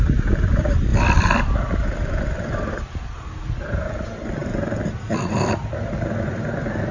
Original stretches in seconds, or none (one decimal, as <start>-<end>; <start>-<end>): none